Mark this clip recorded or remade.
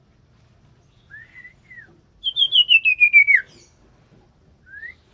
recorded